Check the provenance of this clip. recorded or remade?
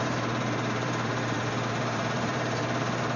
remade